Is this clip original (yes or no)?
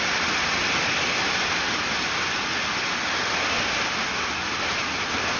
yes